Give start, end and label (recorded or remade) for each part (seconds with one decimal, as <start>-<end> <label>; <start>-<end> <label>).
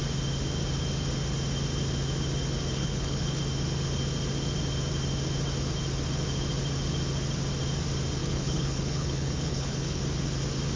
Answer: 0.0-2.7 recorded; 2.7-3.4 remade; 3.4-8.2 recorded; 8.2-10.0 remade; 10.0-10.8 recorded